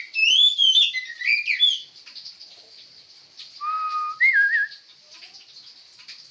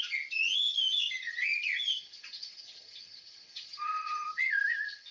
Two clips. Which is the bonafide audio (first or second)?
first